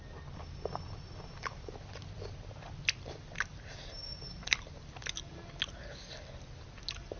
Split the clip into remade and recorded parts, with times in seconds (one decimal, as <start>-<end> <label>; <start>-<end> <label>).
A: 0.0-7.2 recorded